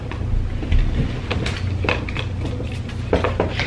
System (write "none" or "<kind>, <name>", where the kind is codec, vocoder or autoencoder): none